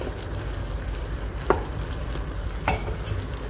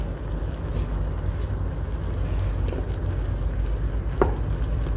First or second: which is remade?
first